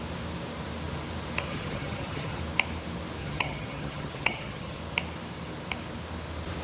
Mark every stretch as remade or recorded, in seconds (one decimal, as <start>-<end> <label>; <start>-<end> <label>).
0.0-1.5 recorded; 1.5-2.4 remade; 2.4-3.2 recorded; 3.2-4.8 remade; 4.8-6.6 recorded